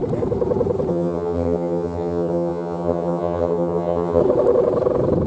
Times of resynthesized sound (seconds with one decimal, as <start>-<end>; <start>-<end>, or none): 0.9-4.2

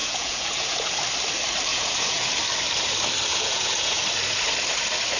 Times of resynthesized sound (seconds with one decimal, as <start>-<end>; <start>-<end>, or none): 0.0-1.0; 1.7-2.3; 3.3-4.0

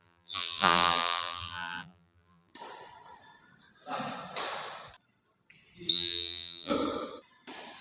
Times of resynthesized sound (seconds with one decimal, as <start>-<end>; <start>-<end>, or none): 0.0-2.5; 5.9-6.7

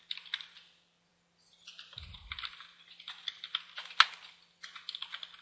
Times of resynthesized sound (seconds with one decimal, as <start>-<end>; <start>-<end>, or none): none

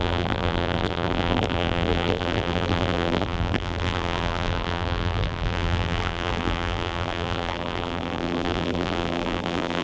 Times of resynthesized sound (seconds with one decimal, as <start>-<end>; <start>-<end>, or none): 0.0-9.8

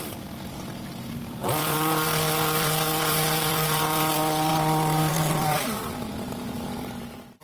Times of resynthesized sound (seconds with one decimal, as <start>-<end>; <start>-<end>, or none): 0.0-7.4